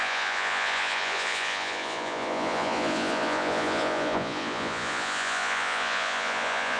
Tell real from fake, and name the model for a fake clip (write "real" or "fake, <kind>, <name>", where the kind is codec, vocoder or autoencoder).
fake, vocoder, Vocos